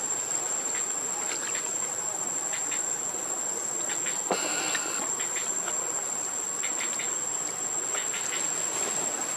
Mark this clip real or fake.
real